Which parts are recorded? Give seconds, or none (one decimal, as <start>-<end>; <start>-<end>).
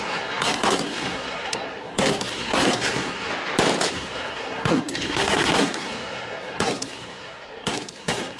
3.3-3.9